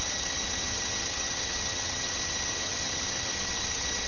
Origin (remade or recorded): remade